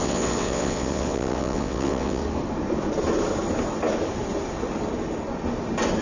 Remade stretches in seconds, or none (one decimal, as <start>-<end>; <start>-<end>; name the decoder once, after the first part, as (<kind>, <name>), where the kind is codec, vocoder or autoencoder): 0.0-2.2 (vocoder, WaveNeXt)

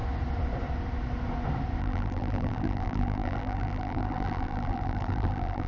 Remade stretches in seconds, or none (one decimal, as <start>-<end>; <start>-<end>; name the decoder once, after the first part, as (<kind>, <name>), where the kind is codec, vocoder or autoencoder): 1.8-5.7 (vocoder, BigVGAN v2)

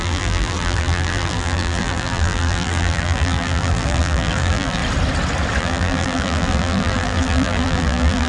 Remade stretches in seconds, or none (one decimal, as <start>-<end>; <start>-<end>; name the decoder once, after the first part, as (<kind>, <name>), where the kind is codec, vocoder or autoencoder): 0.0-4.8 (vocoder, BigVGAN v2); 5.6-8.3

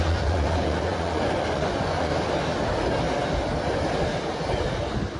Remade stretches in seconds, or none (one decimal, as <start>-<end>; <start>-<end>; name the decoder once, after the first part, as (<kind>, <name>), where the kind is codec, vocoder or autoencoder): 0.0-2.1 (vocoder, Vocos)